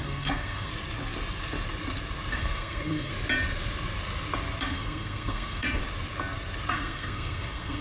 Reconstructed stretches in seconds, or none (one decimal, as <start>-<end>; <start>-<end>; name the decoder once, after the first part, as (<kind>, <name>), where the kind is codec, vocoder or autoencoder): 0.0-0.7 (codec, SNAC); 2.3-3.1; 4.6-5.8; 6.7-7.8